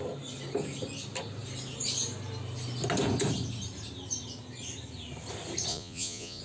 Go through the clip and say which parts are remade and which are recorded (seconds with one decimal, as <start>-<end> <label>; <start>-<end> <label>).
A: 0.0-5.7 recorded; 5.7-6.4 remade